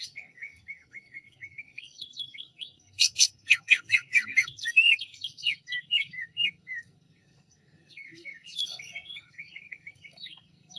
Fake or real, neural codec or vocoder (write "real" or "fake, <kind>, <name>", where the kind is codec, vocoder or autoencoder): fake, codec, SNAC